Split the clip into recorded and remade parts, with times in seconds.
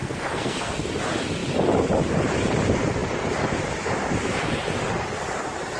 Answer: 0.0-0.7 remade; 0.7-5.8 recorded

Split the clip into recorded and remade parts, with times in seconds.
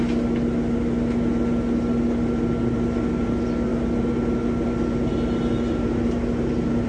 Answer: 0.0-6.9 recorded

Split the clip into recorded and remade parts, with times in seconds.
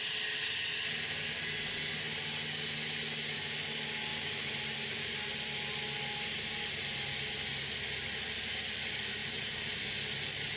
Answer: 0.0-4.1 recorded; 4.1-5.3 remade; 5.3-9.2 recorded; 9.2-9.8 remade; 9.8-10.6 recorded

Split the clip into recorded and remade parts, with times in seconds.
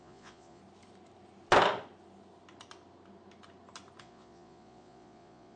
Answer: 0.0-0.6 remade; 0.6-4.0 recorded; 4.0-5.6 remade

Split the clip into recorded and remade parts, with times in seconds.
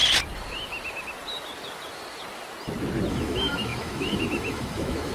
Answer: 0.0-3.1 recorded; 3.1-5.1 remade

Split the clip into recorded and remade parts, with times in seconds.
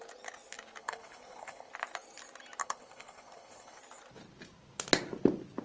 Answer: 0.0-0.8 recorded; 0.8-1.7 remade; 1.7-2.6 recorded; 2.6-3.8 remade; 3.8-5.6 recorded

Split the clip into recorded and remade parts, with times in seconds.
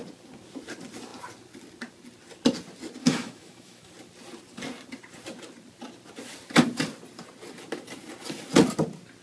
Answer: 0.0-3.0 recorded; 3.0-3.9 remade; 3.9-9.2 recorded